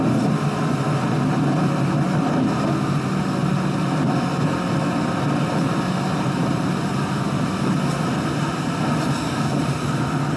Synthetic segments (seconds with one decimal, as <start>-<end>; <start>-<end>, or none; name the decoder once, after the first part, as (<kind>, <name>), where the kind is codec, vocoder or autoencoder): none